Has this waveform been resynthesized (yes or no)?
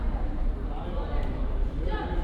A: yes